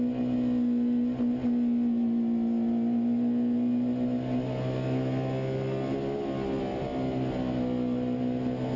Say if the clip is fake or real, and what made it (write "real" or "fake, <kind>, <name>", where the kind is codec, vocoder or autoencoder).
real